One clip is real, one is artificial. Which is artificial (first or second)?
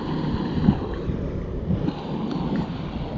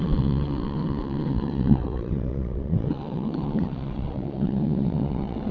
second